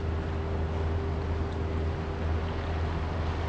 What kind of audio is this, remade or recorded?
recorded